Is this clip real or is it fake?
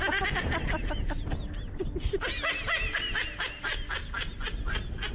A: real